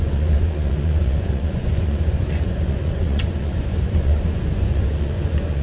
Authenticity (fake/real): fake